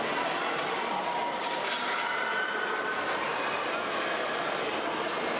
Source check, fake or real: real